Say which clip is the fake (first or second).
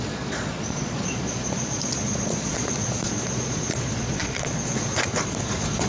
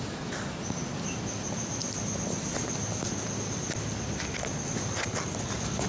first